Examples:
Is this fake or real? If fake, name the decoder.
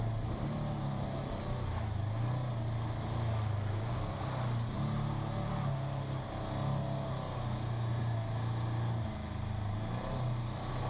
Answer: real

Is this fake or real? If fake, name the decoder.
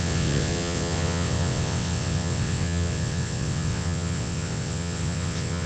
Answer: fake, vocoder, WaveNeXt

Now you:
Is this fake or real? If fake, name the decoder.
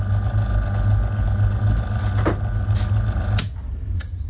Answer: real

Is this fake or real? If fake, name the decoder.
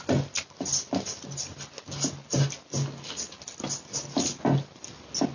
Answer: real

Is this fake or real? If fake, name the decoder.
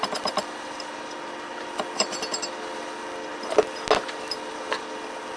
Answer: real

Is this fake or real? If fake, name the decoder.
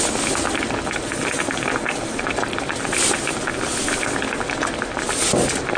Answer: real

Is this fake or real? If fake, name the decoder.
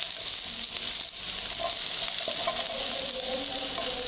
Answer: real